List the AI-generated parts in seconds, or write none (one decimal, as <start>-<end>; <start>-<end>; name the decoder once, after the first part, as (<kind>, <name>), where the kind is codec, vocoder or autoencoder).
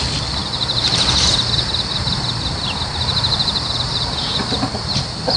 none